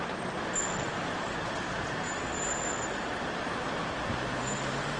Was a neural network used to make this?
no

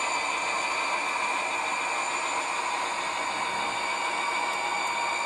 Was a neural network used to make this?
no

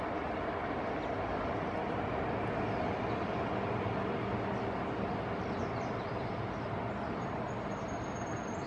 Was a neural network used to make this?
no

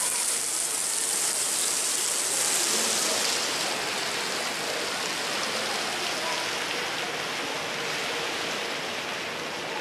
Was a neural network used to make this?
no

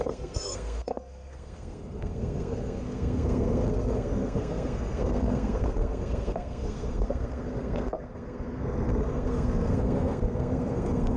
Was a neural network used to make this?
yes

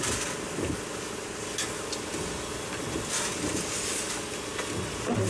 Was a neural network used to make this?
no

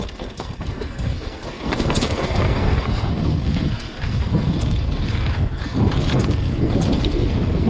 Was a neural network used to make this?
yes